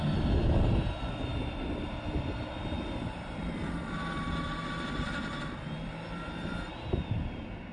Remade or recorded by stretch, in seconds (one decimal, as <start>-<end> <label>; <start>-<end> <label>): 0.0-7.7 recorded